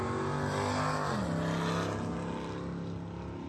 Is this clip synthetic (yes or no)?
no